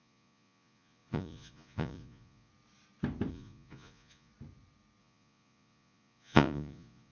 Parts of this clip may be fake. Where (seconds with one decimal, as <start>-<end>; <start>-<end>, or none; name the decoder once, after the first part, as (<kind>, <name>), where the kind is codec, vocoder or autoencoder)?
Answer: 0.0-2.5 (vocoder, Vocos); 3.3-4.3; 5.0-7.1